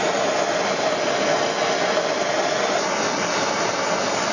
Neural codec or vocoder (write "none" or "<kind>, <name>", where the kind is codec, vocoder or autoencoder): none